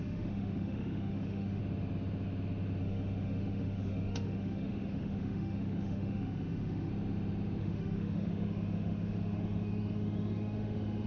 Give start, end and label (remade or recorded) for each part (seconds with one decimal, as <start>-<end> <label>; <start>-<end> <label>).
0.0-1.6 remade; 1.6-2.8 recorded; 2.8-6.9 remade; 6.9-7.6 recorded; 7.6-11.1 remade